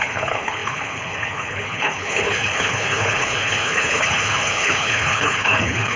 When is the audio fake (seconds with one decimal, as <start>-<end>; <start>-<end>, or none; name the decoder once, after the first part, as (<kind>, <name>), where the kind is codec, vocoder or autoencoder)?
0.0-6.0 (codec, HILCodec)